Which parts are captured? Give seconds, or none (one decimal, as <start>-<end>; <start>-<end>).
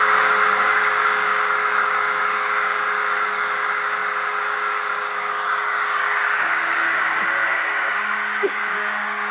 none